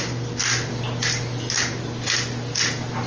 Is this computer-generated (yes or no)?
no